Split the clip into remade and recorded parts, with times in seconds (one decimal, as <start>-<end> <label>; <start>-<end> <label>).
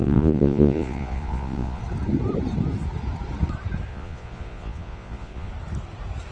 0.0-1.8 remade; 1.8-3.9 recorded; 3.9-5.5 remade; 5.5-6.3 recorded